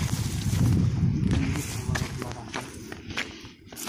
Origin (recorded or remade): recorded